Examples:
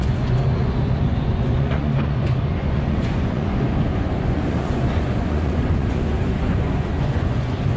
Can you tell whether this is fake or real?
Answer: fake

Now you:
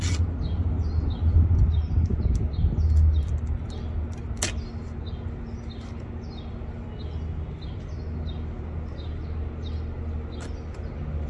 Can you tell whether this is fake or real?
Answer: real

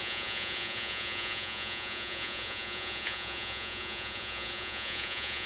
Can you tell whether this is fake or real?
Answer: fake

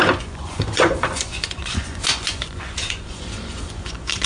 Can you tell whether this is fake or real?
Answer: fake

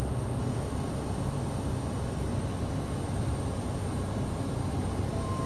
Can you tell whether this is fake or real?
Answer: real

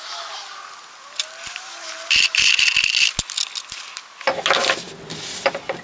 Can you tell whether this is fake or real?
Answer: real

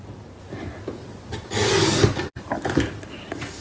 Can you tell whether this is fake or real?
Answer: real